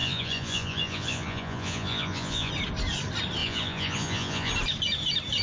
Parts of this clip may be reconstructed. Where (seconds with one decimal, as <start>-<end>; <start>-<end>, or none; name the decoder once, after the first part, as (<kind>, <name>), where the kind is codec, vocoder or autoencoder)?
0.0-2.5 (vocoder, Vocos); 3.4-4.5